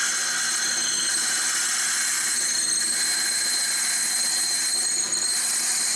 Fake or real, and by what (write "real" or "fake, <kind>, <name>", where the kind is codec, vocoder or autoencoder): real